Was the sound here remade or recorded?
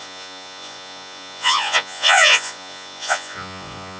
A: remade